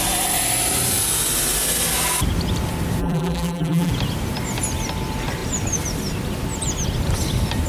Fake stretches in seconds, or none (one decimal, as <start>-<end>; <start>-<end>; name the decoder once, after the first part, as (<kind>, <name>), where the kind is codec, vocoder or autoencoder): 3.0-3.9 (vocoder, BigVGAN v2)